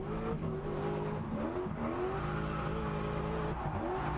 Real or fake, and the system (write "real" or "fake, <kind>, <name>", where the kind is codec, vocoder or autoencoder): real